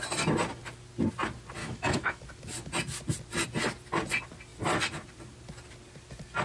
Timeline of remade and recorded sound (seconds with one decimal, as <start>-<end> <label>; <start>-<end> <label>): 0.0-1.6 recorded; 1.6-2.2 remade; 2.2-6.4 recorded